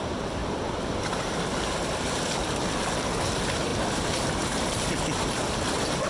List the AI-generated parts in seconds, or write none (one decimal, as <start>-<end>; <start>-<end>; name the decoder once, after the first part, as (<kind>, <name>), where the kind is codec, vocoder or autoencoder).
0.0-6.1 (vocoder, BigVGAN v2)